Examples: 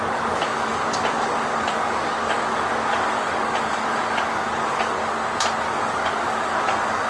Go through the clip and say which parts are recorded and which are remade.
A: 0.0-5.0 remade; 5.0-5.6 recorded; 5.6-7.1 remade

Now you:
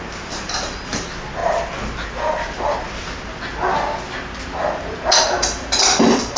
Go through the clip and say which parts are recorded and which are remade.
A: 0.0-6.4 recorded

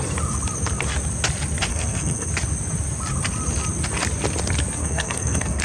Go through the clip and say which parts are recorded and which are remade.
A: 0.0-1.7 recorded; 1.7-2.3 remade; 2.3-4.8 recorded; 4.8-5.6 remade

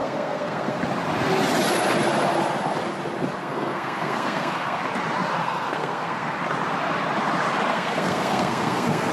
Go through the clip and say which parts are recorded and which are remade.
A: 0.0-0.8 remade; 0.8-3.4 recorded; 3.4-4.8 remade; 4.8-5.4 recorded; 5.4-6.4 remade; 6.4-7.7 recorded; 7.7-9.1 remade